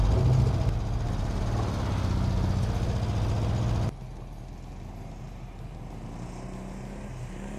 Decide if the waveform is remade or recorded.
recorded